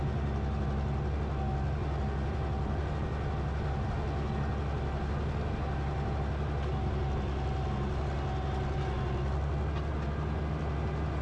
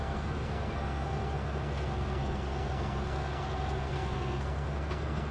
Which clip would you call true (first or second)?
first